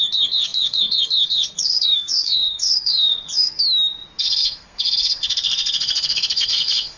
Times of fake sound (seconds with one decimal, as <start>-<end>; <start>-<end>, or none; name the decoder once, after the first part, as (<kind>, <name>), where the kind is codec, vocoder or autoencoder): 0.0-3.6 (codec, SNAC); 4.2-7.0